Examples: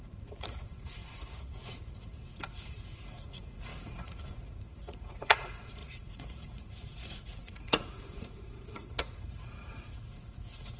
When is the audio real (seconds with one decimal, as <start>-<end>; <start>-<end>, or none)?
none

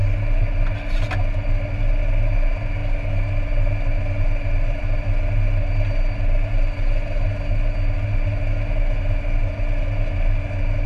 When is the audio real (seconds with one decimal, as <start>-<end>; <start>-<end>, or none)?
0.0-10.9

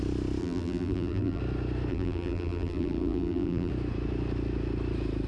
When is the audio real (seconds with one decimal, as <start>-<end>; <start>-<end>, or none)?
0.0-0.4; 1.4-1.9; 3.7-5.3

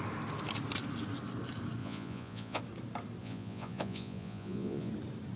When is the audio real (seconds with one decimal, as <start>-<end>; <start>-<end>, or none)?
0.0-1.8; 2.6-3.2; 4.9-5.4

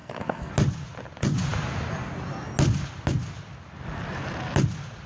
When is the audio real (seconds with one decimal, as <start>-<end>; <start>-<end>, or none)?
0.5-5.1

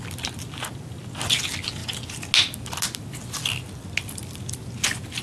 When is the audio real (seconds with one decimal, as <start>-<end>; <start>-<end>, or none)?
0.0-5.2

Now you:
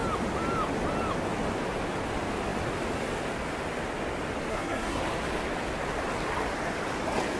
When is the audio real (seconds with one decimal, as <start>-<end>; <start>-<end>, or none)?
0.0-4.5; 5.0-7.4